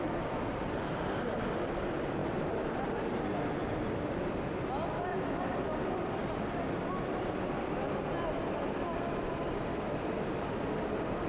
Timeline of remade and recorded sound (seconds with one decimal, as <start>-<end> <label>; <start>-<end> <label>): 0.0-11.3 recorded